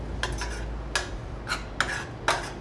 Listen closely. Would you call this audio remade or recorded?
recorded